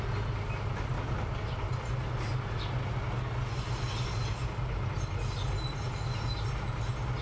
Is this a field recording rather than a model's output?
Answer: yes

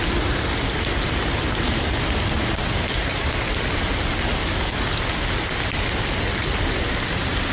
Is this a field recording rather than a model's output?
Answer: yes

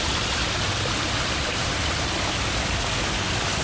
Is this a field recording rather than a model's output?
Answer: yes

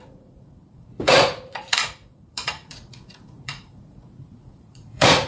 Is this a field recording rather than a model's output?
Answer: no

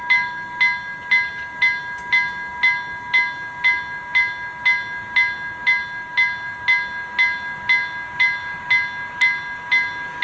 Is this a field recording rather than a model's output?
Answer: yes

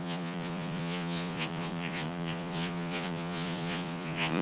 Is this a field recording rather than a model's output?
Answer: no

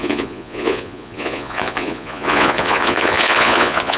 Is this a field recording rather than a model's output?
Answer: no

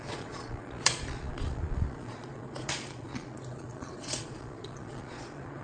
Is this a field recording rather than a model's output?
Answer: no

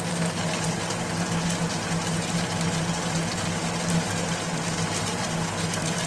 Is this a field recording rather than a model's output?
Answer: yes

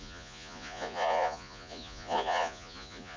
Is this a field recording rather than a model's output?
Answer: no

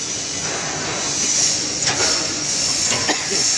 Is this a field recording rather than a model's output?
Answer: no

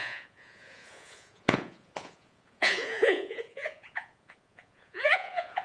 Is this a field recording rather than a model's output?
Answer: no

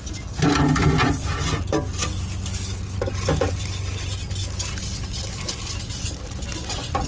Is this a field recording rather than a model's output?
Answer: yes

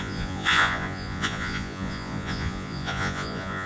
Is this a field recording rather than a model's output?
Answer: no